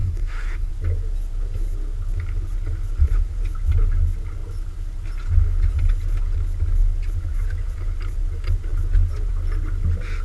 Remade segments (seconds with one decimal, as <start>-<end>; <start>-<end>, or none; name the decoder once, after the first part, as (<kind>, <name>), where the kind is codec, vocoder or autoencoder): 0.0-0.7 (codec, SNAC)